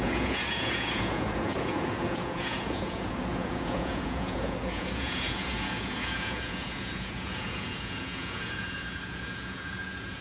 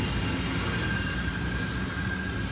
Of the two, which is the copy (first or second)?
first